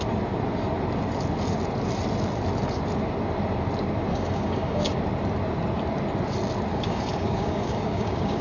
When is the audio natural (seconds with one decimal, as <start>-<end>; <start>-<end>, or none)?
0.0-4.1; 5.0-6.7